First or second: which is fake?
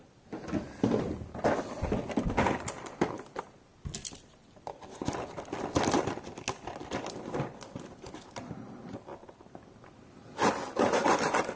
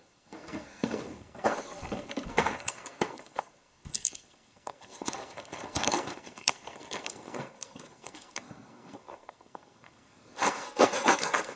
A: second